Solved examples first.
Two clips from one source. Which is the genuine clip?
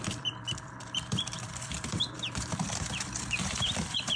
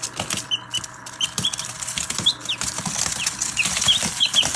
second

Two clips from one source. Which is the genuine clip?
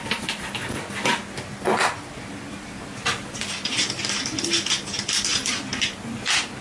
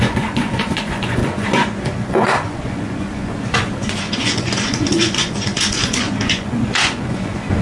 first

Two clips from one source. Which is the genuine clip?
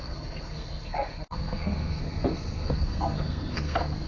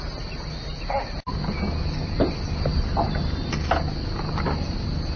second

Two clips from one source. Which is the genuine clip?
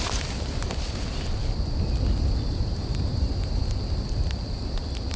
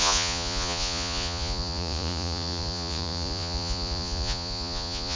first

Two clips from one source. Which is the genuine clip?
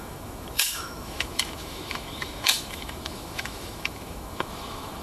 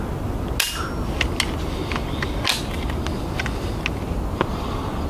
second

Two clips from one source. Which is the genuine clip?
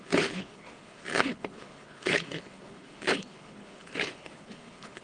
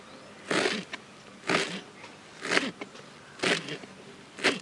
second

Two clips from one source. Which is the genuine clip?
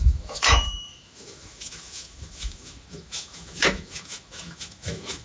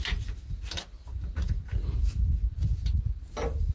second